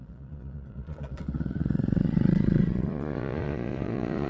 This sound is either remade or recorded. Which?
remade